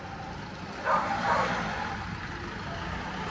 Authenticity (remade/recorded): recorded